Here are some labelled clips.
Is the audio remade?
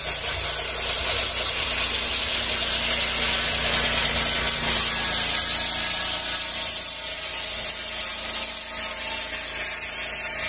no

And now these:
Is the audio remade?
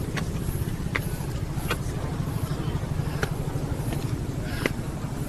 no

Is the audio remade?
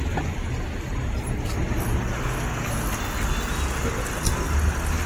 no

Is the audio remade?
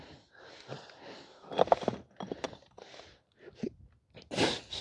no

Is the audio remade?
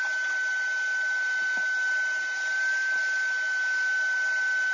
no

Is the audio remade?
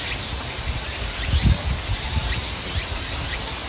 no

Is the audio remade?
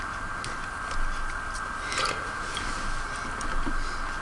no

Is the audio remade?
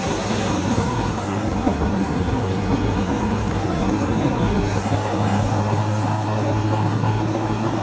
yes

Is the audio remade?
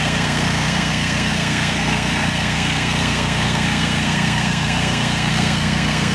yes